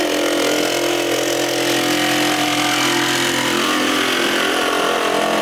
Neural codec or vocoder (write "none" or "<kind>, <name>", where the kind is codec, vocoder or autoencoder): none